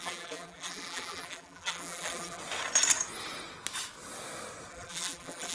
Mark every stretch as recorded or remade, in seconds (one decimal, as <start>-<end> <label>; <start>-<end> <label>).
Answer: 0.0-2.4 remade; 2.4-4.7 recorded; 4.7-5.5 remade